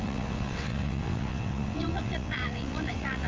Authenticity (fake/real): fake